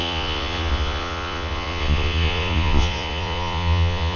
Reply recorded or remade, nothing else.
remade